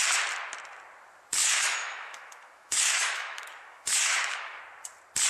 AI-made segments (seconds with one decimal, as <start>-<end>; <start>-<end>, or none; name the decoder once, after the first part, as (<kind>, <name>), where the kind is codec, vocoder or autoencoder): 1.4-4.6 (autoencoder, DAC-VAE)